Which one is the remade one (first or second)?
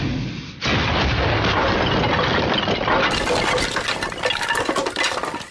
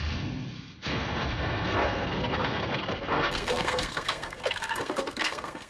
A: second